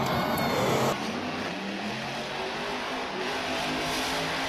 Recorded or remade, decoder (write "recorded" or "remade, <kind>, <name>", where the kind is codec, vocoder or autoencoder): recorded